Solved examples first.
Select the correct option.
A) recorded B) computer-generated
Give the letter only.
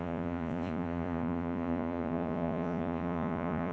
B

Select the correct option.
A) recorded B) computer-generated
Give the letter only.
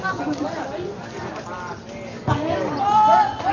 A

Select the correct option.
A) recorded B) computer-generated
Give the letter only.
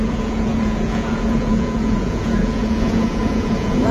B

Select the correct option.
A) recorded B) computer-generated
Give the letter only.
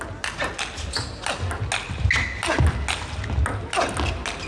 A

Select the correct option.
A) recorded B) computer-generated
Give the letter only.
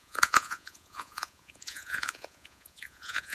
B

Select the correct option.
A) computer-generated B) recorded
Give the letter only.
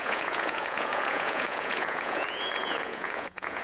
A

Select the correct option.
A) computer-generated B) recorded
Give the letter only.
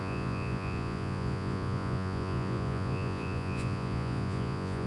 A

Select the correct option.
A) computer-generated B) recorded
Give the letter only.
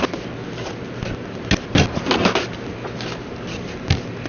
B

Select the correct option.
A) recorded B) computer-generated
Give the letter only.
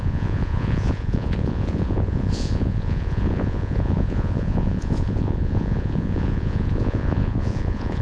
B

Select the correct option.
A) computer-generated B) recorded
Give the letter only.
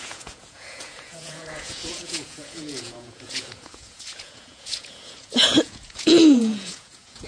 A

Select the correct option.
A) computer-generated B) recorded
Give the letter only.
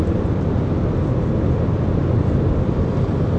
B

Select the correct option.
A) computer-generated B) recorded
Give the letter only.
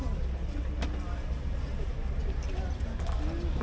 B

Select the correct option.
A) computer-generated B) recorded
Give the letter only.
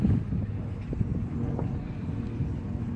B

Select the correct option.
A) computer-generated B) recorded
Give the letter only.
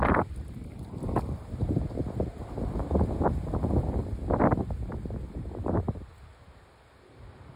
B